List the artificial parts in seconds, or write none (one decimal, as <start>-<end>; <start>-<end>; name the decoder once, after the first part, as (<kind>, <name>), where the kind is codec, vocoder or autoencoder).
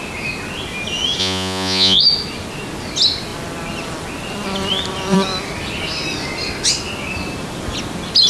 1.2-2.0 (vocoder, Vocos)